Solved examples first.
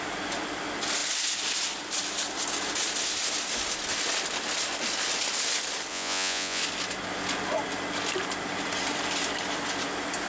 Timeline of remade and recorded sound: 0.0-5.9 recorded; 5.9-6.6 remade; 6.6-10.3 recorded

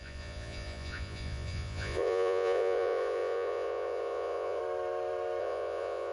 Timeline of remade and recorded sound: 0.0-4.6 remade; 4.6-5.4 recorded; 5.4-6.1 remade

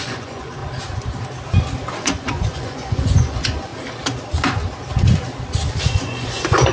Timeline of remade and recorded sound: 0.0-0.6 remade; 0.6-1.9 recorded; 1.9-3.7 remade; 3.7-5.8 recorded; 5.8-6.7 remade

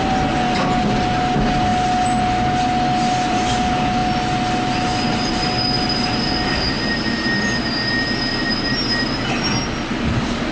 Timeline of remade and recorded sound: 0.0-10.5 recorded

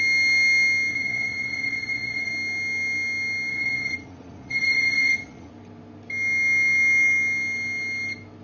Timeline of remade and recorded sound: 0.0-0.9 recorded; 0.9-2.3 remade; 2.3-3.5 recorded; 3.5-5.5 remade; 5.5-8.4 recorded

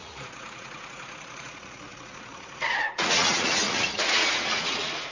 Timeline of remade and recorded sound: 0.0-5.1 remade

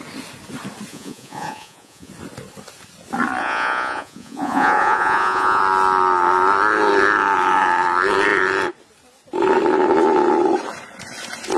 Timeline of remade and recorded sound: 0.0-0.9 recorded; 0.9-2.1 remade; 2.1-3.4 recorded; 3.4-5.6 remade; 5.6-11.6 recorded